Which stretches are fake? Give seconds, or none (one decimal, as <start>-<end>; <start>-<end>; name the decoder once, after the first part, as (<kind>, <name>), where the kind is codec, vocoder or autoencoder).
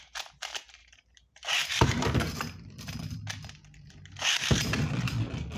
0.8-3.0 (vocoder, BigVGAN v2)